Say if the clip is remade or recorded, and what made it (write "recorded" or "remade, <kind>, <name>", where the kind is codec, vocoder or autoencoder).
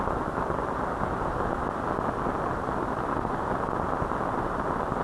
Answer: recorded